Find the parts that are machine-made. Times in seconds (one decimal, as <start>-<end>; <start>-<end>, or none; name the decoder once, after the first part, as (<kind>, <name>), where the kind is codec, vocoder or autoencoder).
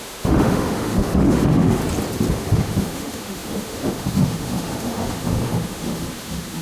0.0-1.8 (autoencoder, DAC-VAE); 2.3-6.6